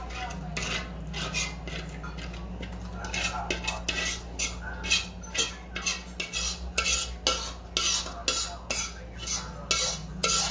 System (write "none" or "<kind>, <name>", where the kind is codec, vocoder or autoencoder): none